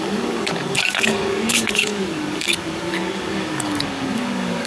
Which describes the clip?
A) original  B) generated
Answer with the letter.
B